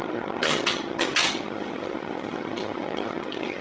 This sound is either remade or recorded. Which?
remade